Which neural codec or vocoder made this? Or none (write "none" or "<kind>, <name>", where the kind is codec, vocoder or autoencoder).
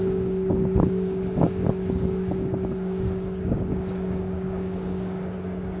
codec, DAC